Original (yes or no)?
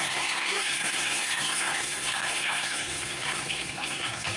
no